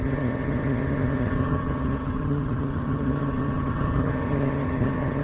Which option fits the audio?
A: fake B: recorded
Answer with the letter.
A